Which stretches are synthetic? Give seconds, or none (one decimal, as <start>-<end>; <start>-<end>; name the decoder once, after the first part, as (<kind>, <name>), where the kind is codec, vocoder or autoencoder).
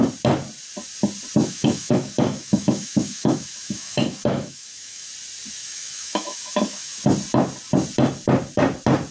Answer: 1.4-5.1 (autoencoder, DAC-VAE); 5.6-7.0